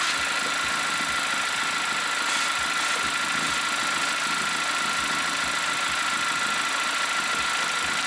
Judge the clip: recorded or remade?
recorded